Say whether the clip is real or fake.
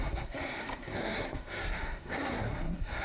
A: fake